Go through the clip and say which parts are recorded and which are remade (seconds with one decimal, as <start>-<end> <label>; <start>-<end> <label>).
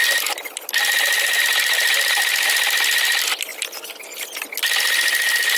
0.0-5.6 recorded